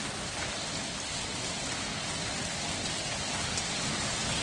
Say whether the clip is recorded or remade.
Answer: recorded